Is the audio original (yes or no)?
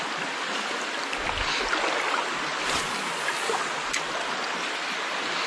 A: yes